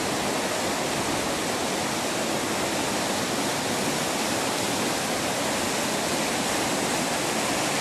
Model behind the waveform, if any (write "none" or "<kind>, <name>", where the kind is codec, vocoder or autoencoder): none